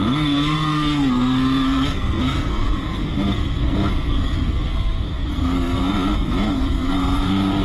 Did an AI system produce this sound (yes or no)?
yes